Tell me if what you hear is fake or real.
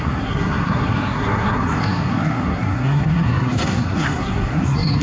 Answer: fake